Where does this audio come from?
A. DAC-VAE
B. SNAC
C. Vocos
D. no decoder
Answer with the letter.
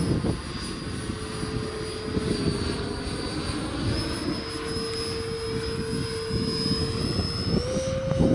D